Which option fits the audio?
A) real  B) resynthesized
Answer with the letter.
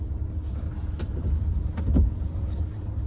A